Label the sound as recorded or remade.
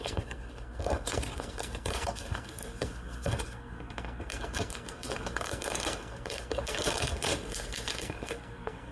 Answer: remade